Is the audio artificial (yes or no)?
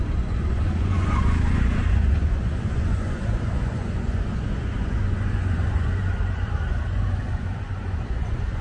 yes